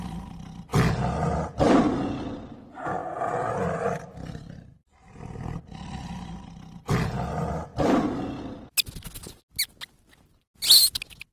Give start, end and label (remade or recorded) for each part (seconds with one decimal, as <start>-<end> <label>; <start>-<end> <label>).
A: 0.0-11.3 recorded